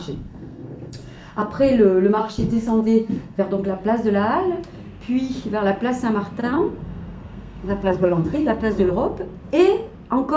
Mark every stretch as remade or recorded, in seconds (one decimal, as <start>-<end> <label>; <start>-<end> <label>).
0.0-1.4 remade; 1.4-2.2 recorded; 2.2-3.4 remade; 3.4-6.4 recorded; 6.4-8.9 remade; 8.9-10.4 recorded